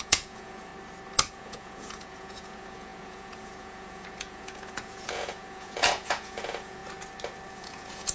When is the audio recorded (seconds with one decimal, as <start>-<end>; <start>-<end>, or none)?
0.7-1.3; 6.8-7.5